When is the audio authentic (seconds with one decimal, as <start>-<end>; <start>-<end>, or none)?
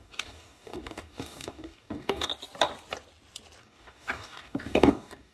2.3-3.6